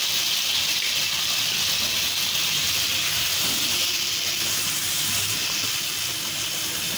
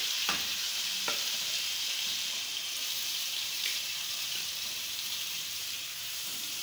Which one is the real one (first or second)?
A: first